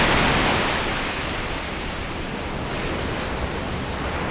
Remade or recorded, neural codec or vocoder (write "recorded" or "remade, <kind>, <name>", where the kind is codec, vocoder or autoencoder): recorded